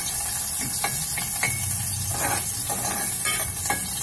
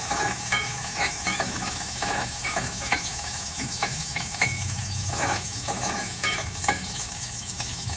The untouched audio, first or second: first